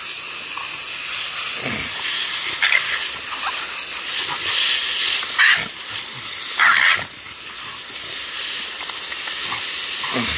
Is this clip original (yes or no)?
yes